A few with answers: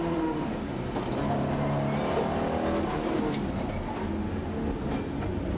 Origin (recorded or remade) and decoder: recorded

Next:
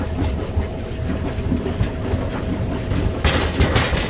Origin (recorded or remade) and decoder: recorded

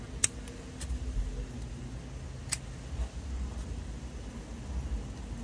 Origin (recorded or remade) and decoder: recorded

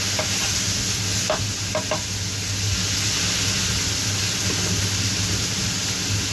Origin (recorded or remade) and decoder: recorded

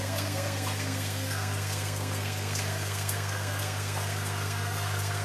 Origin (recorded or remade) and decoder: remade, codec, SNAC